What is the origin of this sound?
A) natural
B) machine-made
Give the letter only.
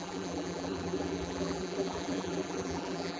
B